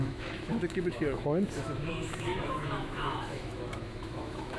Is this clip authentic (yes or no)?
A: no